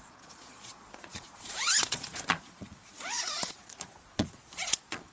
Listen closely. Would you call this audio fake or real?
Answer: fake